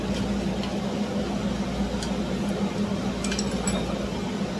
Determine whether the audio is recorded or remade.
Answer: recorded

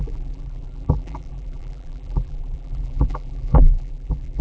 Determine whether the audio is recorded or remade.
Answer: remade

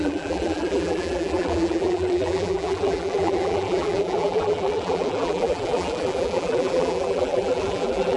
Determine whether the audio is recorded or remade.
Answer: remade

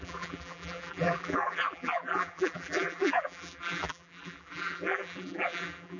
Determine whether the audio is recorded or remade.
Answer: remade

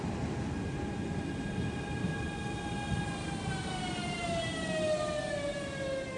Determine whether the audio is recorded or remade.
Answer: recorded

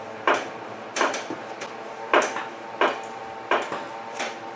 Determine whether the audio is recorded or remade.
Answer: remade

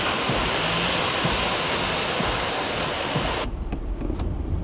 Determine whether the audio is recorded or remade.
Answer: recorded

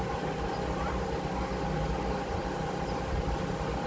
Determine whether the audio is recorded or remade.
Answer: recorded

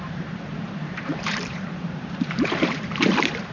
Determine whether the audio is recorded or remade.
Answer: remade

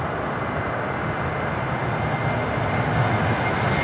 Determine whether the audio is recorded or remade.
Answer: recorded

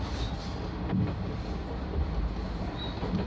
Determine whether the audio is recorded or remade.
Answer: recorded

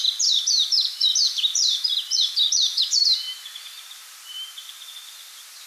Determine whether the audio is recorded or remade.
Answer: remade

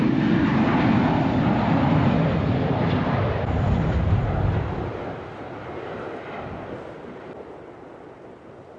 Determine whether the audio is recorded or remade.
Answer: recorded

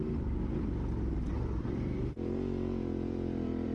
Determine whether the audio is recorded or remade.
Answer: remade